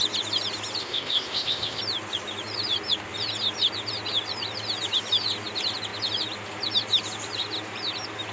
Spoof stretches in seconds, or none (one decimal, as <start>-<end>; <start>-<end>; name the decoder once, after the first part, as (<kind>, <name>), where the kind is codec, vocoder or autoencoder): 0.8-1.8 (codec, ZipCodec)